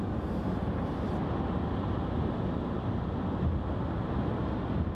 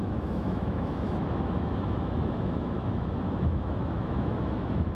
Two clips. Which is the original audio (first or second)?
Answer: first